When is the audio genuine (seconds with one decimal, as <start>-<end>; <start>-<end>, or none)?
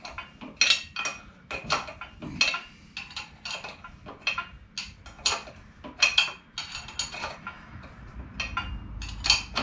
0.0-7.2; 7.8-9.6